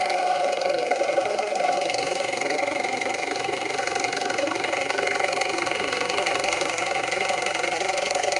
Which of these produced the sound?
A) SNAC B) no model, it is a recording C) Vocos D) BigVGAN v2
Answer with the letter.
A